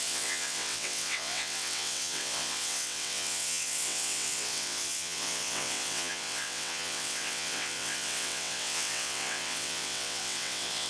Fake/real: fake